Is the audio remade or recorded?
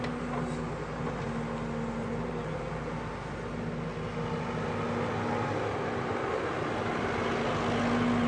recorded